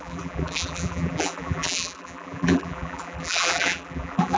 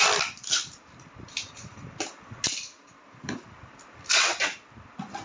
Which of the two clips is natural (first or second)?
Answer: second